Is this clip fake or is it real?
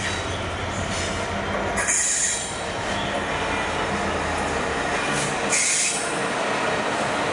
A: real